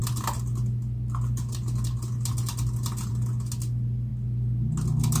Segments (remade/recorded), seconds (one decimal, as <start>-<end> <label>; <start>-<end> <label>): 0.0-5.2 recorded